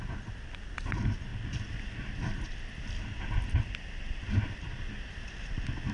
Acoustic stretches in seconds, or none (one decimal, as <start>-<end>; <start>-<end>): 0.0-5.9

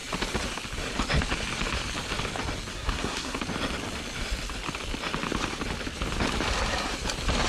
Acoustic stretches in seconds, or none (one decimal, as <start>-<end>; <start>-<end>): 0.0-2.7; 3.4-7.5